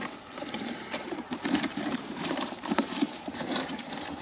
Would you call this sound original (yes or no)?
no